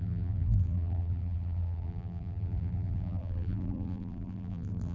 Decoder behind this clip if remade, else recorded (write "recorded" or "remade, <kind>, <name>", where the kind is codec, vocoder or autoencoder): remade, vocoder, BigVGAN v2